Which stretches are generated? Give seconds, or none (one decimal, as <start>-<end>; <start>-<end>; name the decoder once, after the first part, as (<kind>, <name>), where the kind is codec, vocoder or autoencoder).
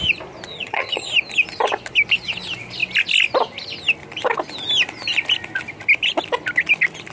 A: 0.5-1.1 (vocoder, HiFi-GAN)